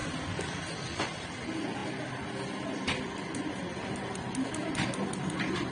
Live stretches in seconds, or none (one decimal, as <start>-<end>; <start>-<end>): 0.0-5.7